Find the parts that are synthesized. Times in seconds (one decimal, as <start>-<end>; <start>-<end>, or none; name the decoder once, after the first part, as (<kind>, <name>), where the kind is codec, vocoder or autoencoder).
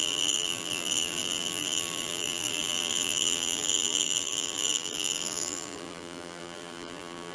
0.0-7.3 (vocoder, BigVGAN v2)